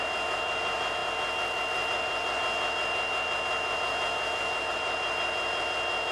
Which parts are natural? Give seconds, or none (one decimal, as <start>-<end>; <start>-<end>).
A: 0.0-6.1